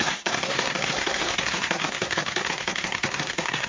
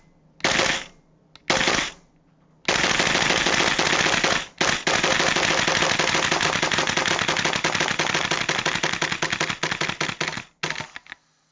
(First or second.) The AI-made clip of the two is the first